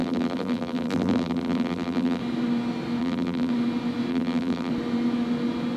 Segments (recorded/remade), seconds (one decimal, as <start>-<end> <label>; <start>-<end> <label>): 0.0-2.2 remade; 2.2-3.0 recorded; 3.0-3.5 remade; 3.5-4.1 recorded; 4.1-4.7 remade; 4.7-5.8 recorded